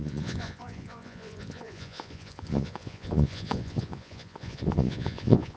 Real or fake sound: fake